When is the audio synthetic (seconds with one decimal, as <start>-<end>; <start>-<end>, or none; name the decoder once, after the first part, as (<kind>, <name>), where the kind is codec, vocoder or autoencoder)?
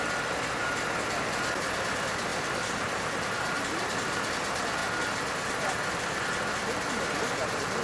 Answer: 2.3-4.3 (vocoder, BigVGAN v2)